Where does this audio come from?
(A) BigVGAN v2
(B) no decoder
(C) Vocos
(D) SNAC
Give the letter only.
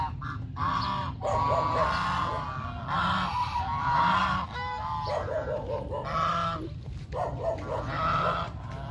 B